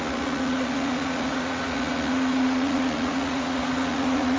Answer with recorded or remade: remade